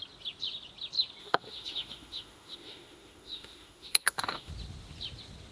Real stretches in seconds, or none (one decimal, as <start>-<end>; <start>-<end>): 0.0-1.2; 4.5-5.5